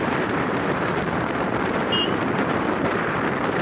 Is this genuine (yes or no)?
no